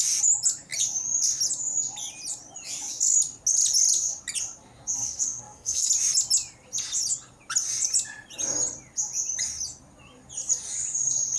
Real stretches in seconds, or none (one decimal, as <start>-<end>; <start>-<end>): 0.0-5.0; 5.9-11.4

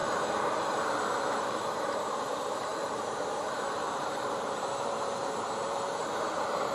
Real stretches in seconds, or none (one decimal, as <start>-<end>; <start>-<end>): none

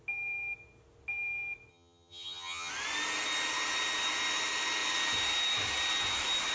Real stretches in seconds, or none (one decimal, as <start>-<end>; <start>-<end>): 0.0-1.7; 2.7-6.5

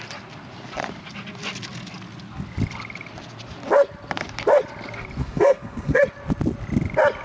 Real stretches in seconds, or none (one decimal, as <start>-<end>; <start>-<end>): 0.0-5.2; 6.0-7.2

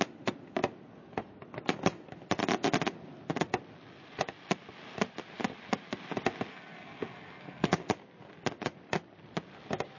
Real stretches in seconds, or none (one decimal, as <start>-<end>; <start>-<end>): 0.0-6.5; 7.7-10.0

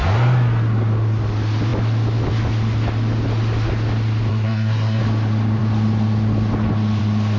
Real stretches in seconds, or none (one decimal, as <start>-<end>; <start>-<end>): 0.0-4.3; 5.0-7.4

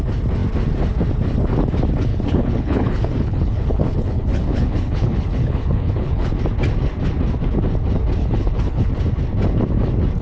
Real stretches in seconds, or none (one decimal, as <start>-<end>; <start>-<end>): 0.0-2.1; 6.3-8.2; 8.9-10.2